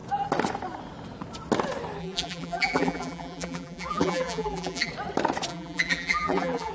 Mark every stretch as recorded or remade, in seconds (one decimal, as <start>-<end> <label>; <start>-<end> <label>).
0.0-2.0 recorded; 2.0-4.9 remade; 4.9-5.5 recorded; 5.5-6.7 remade